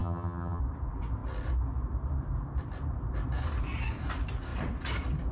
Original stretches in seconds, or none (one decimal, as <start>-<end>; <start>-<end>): 0.6-5.3